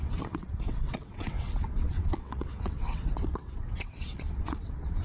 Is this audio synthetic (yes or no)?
yes